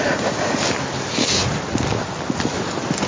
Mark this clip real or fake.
real